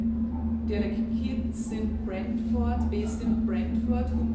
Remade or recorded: recorded